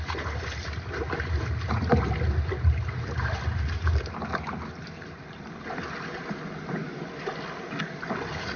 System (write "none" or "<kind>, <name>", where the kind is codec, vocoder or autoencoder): none